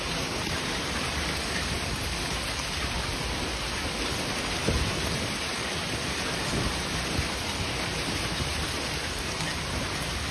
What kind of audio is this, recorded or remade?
remade